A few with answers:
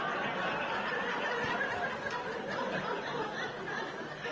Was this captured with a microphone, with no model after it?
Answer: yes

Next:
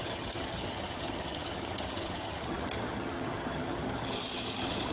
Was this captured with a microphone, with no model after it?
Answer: no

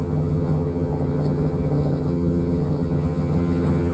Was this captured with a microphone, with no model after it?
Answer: no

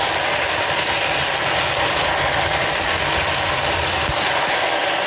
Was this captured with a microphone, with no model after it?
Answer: yes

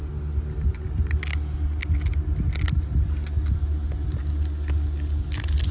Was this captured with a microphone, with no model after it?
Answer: yes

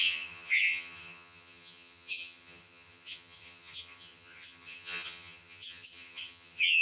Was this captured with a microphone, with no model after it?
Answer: no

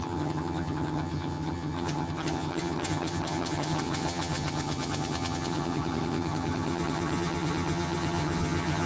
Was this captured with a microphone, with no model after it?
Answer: no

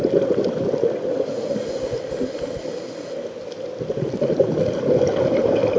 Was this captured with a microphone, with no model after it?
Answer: yes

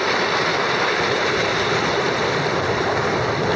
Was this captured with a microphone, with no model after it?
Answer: yes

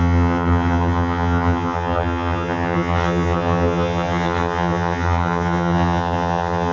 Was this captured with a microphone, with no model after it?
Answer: no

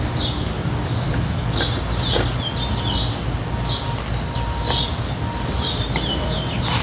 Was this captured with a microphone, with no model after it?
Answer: yes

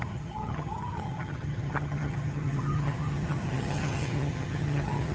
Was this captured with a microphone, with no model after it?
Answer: no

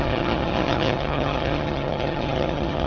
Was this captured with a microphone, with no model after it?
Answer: no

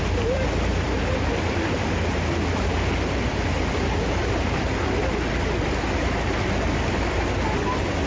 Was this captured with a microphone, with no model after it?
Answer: yes